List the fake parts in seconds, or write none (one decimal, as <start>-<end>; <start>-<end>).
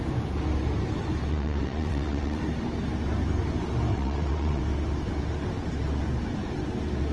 1.3-2.4; 3.9-4.6